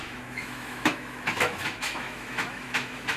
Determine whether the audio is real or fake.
fake